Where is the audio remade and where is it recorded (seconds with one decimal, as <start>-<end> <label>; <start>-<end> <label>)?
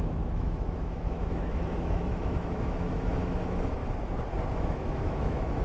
0.0-3.8 remade; 3.8-4.5 recorded; 4.5-5.6 remade